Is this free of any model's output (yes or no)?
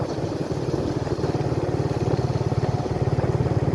yes